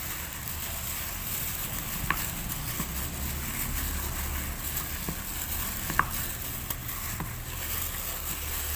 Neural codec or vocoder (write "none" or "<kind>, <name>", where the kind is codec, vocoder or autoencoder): none